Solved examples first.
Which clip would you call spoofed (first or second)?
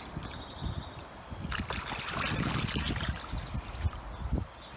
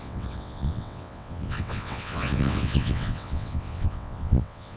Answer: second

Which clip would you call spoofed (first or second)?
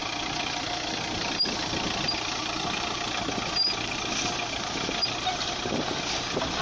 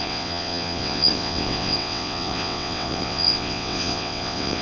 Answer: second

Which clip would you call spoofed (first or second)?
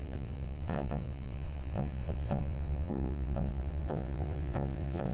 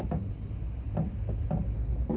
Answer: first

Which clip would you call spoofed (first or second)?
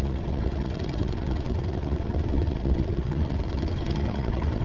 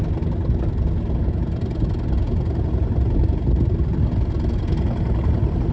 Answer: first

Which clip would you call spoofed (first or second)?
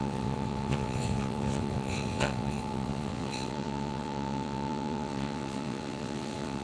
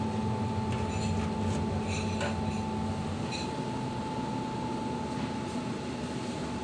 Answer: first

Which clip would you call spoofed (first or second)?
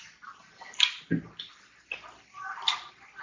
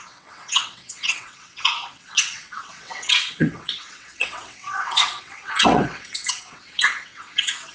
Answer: second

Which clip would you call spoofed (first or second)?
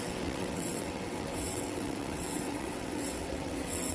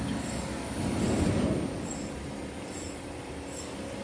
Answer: first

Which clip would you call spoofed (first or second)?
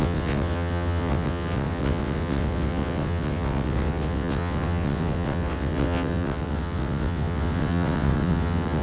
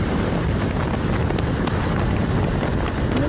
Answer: first